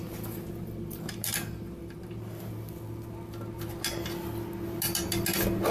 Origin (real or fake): real